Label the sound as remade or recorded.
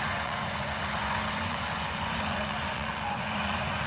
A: remade